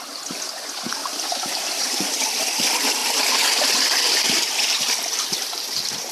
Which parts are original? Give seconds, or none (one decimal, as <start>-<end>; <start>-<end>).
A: 0.0-1.0; 2.0-3.0; 5.0-6.1